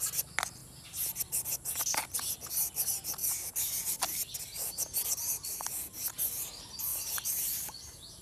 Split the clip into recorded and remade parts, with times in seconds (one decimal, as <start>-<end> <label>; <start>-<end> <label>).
0.0-6.9 recorded; 6.9-8.2 remade